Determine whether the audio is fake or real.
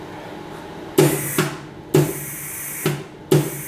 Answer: real